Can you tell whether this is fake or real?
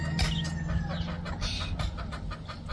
real